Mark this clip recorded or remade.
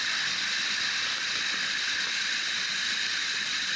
recorded